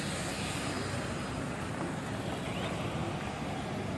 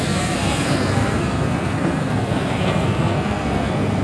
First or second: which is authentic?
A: first